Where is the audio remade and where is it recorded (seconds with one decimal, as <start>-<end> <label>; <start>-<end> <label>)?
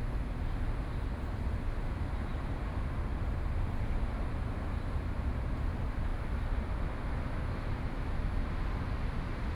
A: 0.0-9.5 recorded